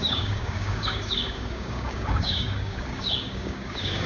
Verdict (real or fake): fake